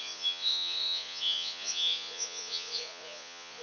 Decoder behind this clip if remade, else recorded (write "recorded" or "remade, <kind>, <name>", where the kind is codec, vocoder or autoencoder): remade, vocoder, Vocos